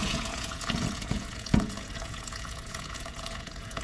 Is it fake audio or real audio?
fake